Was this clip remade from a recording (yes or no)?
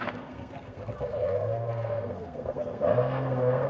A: yes